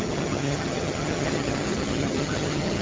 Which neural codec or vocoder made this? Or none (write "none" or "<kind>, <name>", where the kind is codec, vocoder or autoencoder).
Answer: vocoder, HiFi-GAN